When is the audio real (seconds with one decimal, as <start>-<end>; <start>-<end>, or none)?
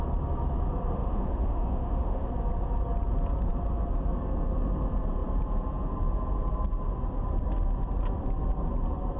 0.0-0.9; 2.3-9.2